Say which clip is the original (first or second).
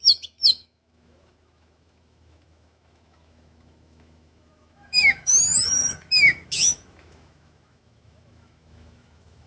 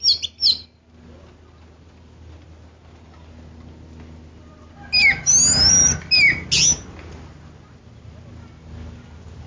second